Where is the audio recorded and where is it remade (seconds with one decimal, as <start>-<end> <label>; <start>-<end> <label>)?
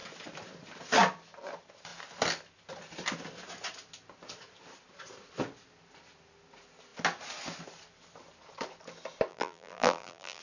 0.0-9.3 recorded; 9.3-10.4 remade